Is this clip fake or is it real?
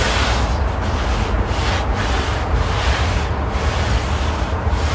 real